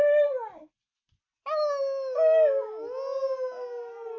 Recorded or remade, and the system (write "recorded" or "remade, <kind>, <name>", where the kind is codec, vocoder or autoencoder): recorded